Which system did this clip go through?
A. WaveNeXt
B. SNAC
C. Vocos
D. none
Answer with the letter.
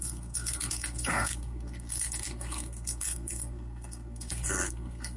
B